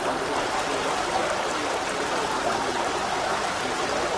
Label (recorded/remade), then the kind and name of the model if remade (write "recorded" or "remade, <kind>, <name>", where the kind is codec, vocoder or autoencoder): recorded